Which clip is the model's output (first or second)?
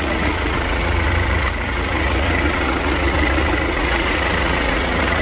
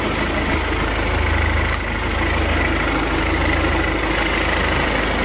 first